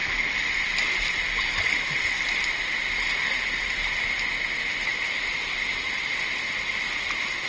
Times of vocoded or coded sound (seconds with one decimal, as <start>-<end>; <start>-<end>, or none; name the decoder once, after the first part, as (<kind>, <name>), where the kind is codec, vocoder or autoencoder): none